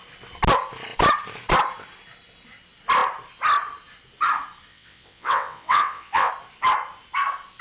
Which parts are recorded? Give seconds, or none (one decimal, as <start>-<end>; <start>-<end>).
0.0-4.7; 6.3-7.6